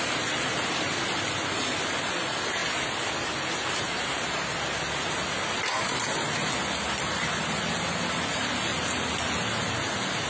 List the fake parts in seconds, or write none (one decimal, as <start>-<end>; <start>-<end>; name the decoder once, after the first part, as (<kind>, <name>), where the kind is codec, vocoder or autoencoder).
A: none